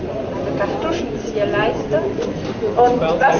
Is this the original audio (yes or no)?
yes